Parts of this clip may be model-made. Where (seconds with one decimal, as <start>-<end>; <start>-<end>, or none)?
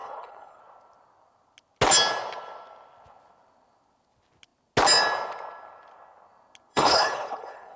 0.0-0.6; 6.7-7.8